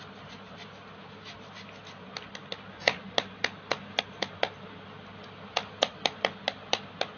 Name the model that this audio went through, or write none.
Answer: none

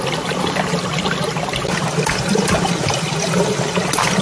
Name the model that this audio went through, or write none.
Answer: vocoder, BigVGAN v2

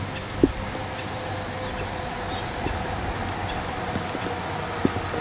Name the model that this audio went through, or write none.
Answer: none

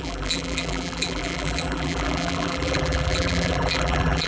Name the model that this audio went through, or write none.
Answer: vocoder, BigVGAN v2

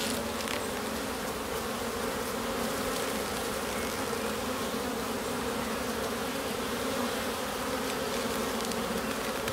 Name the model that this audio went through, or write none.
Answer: none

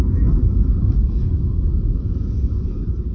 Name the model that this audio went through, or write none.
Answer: vocoder, BigVGAN v2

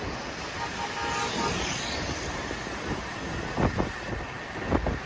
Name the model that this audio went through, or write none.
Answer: none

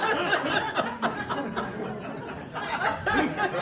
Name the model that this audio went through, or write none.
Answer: none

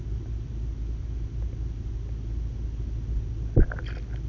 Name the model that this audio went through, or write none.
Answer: none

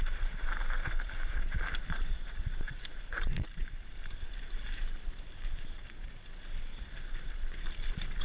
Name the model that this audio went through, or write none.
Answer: vocoder, BigVGAN v2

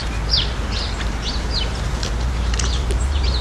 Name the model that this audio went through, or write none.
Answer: vocoder, BigVGAN v2